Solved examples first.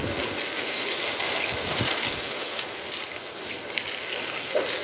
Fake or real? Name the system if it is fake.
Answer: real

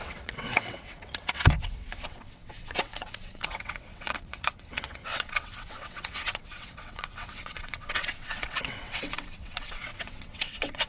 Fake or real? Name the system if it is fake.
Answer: fake, vocoder, WaveNeXt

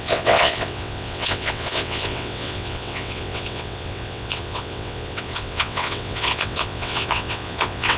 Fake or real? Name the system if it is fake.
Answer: fake, vocoder, WaveNeXt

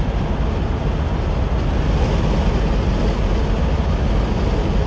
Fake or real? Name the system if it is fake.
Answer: real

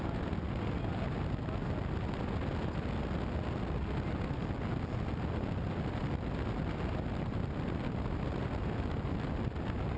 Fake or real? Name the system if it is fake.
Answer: real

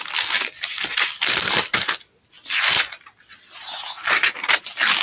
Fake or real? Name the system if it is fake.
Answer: real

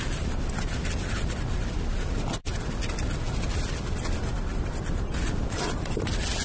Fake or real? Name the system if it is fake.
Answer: real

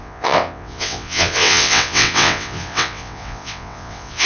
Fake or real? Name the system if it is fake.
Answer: fake, vocoder, WaveNeXt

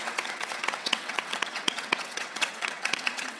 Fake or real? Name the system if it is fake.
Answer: fake, vocoder, WaveNeXt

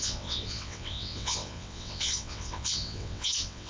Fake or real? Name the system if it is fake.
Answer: fake, vocoder, WaveNeXt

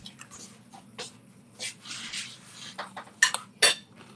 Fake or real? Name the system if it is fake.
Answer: real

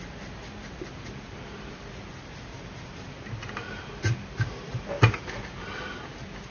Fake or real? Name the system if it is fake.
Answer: real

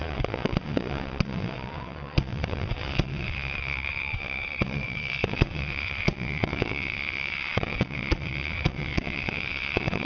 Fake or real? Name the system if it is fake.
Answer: fake, vocoder, WaveNeXt